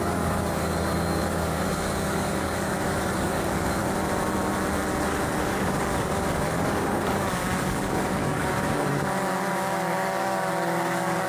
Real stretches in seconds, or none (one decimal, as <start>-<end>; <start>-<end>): 3.8-5.4